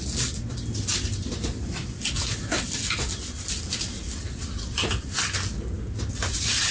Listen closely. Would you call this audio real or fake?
real